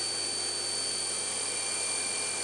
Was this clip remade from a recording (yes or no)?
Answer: no